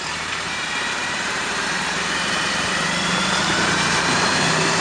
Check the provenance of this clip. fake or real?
fake